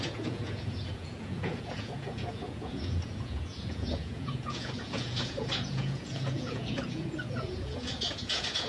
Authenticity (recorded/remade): remade